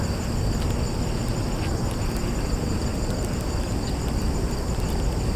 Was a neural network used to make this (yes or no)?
no